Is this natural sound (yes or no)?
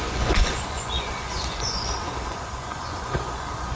no